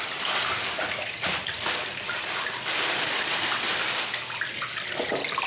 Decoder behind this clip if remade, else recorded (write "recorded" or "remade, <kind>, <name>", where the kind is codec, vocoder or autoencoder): remade, vocoder, BigVGAN v2